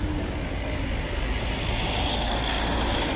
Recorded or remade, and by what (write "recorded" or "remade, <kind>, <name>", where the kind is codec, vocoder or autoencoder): recorded